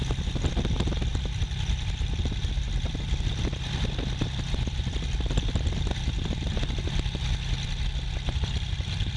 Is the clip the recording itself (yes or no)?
yes